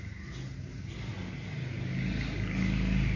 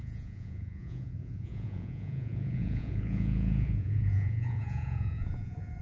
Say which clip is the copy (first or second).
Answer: second